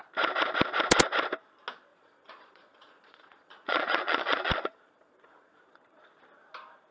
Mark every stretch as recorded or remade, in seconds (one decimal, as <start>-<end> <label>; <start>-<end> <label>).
0.0-1.9 recorded; 1.9-6.0 remade; 6.0-6.9 recorded